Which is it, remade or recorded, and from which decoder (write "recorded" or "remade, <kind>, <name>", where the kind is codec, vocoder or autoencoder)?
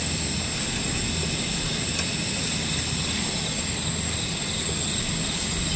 recorded